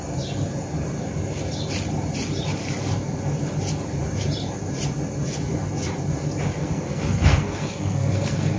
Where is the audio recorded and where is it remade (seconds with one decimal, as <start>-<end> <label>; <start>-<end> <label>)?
0.0-6.6 recorded; 6.6-8.6 remade